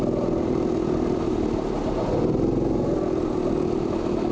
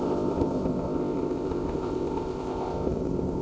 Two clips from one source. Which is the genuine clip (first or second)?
first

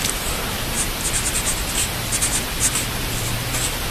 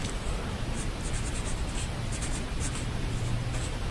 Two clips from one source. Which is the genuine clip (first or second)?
first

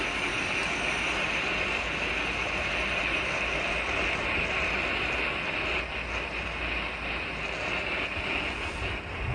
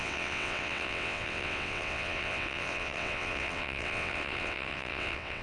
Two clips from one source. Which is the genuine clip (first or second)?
first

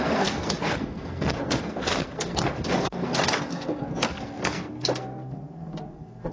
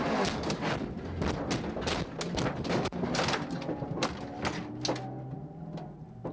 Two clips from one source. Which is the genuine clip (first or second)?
second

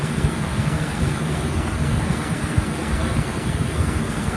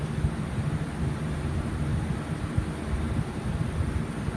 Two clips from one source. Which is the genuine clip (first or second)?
second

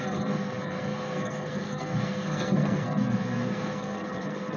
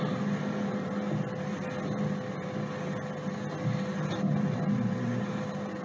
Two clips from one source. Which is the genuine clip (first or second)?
second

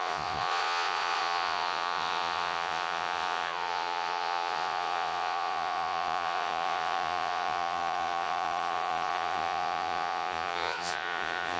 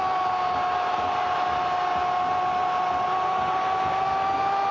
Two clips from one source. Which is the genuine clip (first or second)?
second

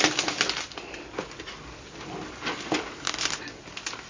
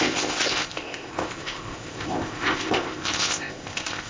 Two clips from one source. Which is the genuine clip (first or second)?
first